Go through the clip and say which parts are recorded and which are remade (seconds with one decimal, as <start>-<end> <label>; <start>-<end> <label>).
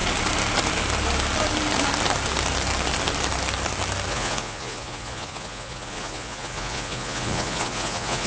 0.0-4.1 recorded; 4.1-8.3 remade